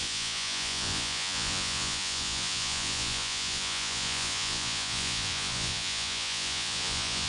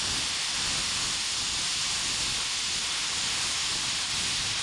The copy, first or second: first